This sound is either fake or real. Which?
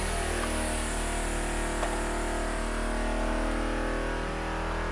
real